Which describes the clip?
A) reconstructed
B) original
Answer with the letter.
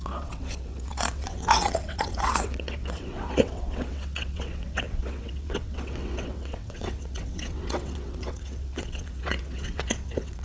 A